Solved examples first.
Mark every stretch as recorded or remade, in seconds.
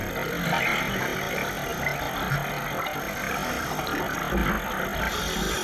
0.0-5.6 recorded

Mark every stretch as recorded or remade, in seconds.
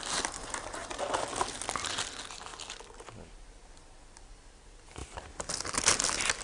0.0-5.0 recorded; 5.0-5.5 remade; 5.5-6.4 recorded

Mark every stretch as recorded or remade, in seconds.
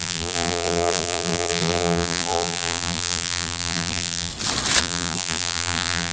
0.0-4.3 remade; 4.3-4.8 recorded; 4.8-6.1 remade